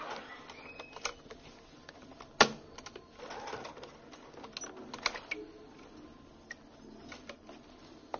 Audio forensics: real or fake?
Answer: real